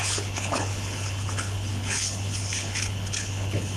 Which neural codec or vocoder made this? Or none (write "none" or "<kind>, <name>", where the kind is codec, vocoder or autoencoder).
codec, HILCodec